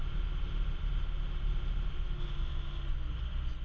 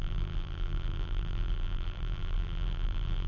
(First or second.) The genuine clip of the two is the first